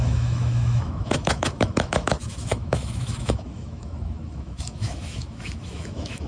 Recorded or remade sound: remade